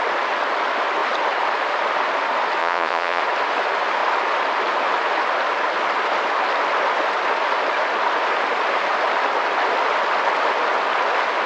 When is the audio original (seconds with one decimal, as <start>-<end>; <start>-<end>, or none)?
0.0-2.6; 3.2-11.5

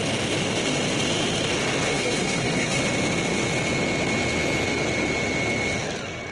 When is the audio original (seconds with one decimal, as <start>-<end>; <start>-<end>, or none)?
0.0-1.9; 2.8-6.3